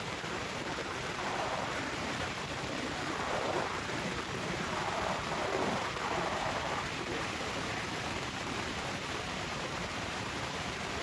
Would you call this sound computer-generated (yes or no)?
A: yes